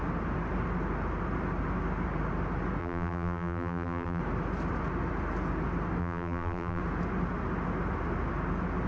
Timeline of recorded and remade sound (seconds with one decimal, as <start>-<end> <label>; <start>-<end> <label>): 0.0-2.8 recorded; 2.8-4.2 remade; 4.2-6.0 recorded; 6.0-6.8 remade; 6.8-8.9 recorded